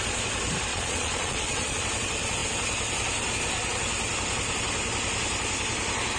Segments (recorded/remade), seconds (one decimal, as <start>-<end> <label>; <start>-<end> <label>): 0.0-0.7 recorded; 0.7-1.8 remade; 1.8-6.2 recorded